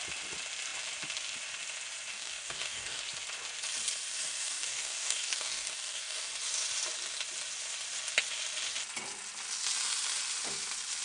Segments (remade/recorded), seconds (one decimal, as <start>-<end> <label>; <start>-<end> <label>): 0.0-2.1 recorded; 2.1-3.0 remade; 3.0-4.1 recorded; 4.1-6.3 remade; 6.3-11.0 recorded